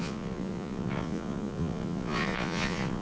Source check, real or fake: fake